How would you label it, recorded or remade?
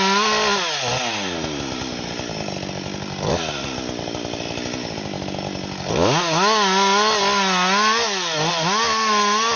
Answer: recorded